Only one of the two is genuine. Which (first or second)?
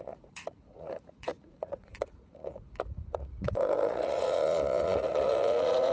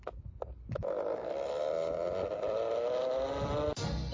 second